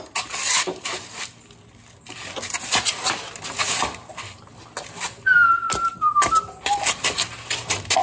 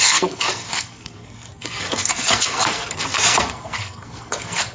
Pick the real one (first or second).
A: first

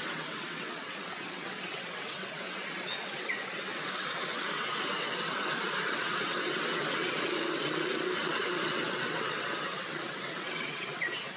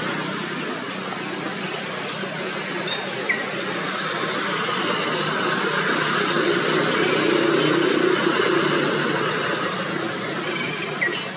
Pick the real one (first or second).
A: second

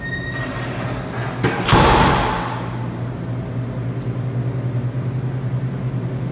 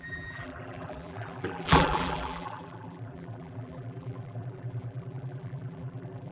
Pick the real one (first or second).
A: first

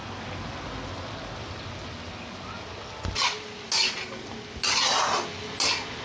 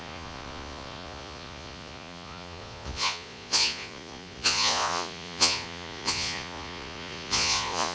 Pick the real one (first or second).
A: first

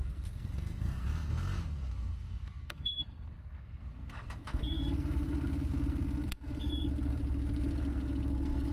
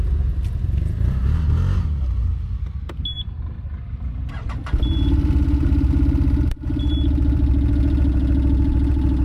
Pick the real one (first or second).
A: second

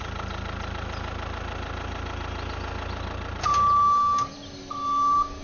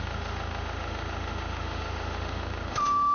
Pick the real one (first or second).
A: first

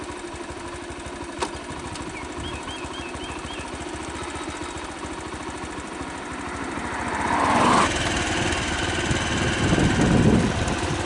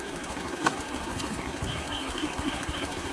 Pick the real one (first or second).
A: first